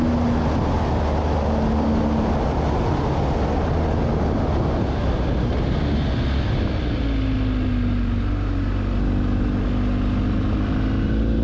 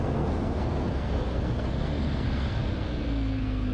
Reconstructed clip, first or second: second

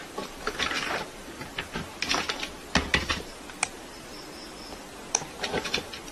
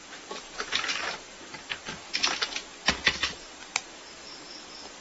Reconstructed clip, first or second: first